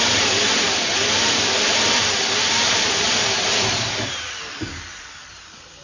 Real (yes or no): no